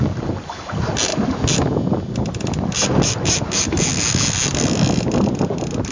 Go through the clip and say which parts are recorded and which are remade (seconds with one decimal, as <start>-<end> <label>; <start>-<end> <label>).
0.0-5.9 recorded